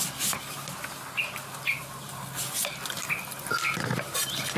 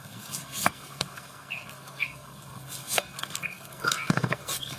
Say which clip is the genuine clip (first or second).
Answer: first